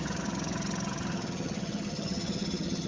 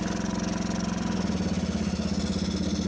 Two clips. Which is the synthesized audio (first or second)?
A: first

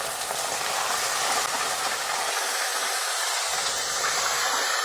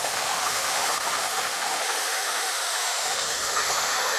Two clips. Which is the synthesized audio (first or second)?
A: second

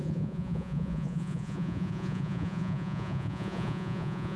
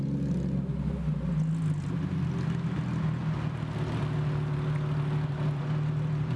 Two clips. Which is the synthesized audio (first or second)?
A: first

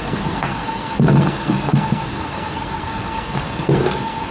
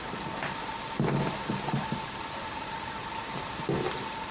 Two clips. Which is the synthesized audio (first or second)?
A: first